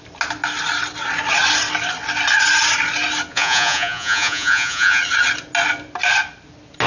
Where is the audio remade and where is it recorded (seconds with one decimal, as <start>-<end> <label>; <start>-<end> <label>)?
0.0-3.3 recorded; 3.3-5.0 remade; 5.0-6.9 recorded